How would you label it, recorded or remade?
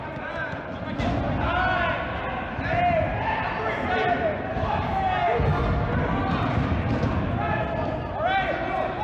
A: recorded